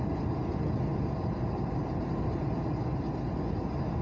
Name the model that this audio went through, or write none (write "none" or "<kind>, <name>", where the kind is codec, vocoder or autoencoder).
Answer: none